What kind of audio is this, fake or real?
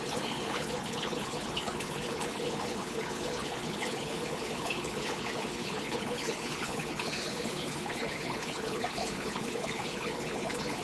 fake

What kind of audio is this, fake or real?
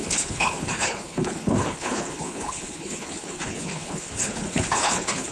fake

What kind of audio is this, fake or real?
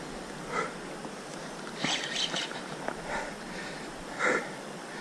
real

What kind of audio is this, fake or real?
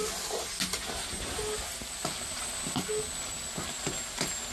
real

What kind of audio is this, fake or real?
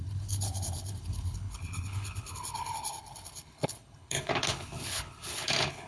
fake